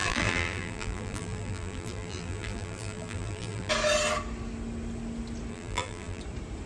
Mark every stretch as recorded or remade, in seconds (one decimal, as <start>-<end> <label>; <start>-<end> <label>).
0.0-3.7 remade; 3.7-5.5 recorded; 5.5-6.2 remade; 6.2-6.7 recorded